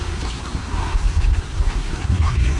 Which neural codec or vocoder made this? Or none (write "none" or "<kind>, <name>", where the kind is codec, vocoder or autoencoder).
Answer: codec, SNAC